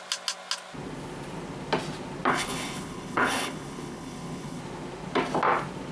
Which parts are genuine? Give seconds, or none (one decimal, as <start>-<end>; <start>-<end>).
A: 0.0-2.3; 4.6-5.9